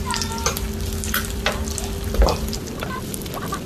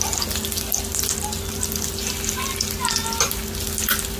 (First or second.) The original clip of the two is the second